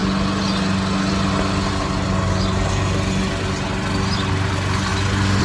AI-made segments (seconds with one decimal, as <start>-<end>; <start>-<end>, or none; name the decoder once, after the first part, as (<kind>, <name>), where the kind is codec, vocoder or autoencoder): none